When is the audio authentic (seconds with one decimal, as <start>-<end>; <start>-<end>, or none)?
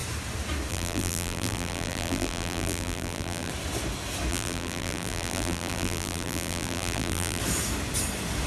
0.0-0.7; 3.5-4.3; 7.4-8.5